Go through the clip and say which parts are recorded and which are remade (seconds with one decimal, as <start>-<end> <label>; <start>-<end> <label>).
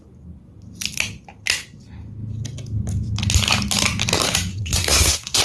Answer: 0.0-4.5 recorded; 4.5-5.4 remade